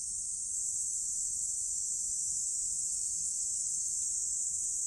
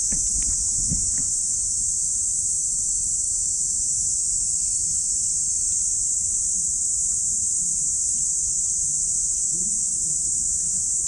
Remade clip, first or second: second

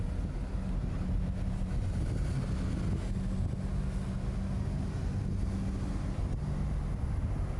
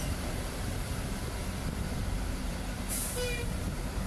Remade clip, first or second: second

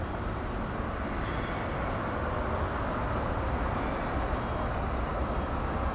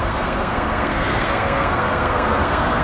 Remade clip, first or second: second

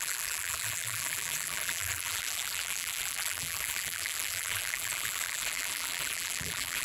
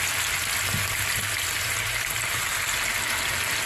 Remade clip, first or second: first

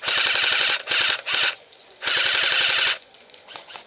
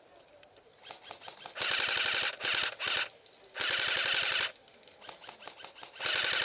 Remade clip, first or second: first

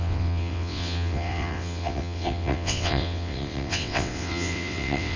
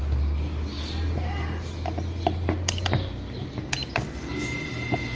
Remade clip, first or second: first